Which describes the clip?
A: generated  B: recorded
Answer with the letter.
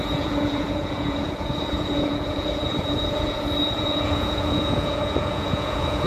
A